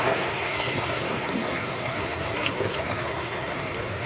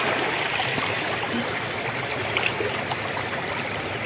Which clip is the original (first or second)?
second